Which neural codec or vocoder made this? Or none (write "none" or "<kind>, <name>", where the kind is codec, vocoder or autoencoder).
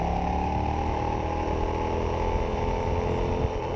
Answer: none